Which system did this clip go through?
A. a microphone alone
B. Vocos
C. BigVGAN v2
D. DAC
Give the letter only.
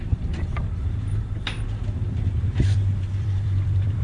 C